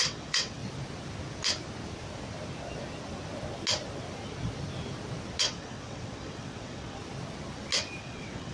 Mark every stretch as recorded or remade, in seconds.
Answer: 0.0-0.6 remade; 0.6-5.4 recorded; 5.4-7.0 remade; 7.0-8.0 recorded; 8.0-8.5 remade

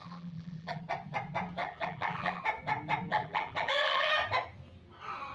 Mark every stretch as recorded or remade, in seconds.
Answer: 0.0-0.8 remade; 0.8-1.6 recorded; 1.6-2.4 remade; 2.4-3.1 recorded; 3.1-4.1 remade; 4.1-5.3 recorded

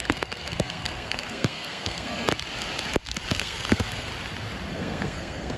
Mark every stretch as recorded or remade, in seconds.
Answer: 0.0-2.3 remade; 2.3-3.3 recorded; 3.3-4.1 remade; 4.1-4.7 recorded; 4.7-5.6 remade

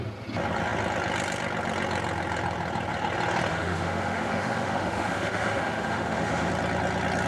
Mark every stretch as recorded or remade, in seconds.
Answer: 0.0-3.5 recorded; 3.5-6.5 remade; 6.5-7.3 recorded

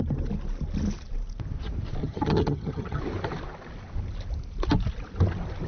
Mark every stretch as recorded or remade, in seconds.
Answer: 0.0-2.0 recorded; 2.0-3.0 remade; 3.0-5.7 recorded

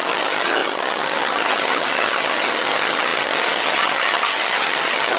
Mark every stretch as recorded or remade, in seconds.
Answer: 0.0-5.2 remade

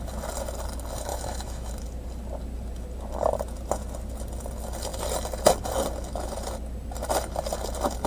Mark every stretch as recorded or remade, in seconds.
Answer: 0.0-1.1 recorded; 1.1-1.7 remade; 1.7-8.1 recorded